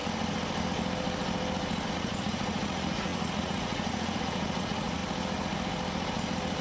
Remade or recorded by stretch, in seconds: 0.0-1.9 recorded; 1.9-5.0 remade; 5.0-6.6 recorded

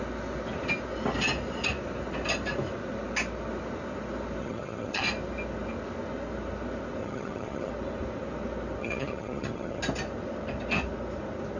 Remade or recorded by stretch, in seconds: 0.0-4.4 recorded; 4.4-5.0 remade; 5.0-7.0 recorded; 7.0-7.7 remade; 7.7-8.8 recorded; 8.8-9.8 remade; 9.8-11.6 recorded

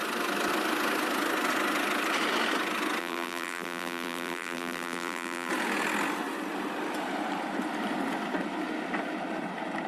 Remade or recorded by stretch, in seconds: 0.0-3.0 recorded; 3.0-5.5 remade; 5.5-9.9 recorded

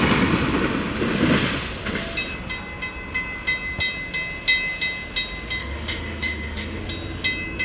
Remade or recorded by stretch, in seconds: 0.0-5.6 recorded; 5.6-6.8 remade; 6.8-7.6 recorded

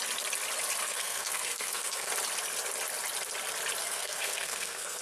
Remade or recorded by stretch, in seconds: 0.0-0.8 recorded; 0.8-2.1 remade; 2.1-3.8 recorded; 3.8-5.0 remade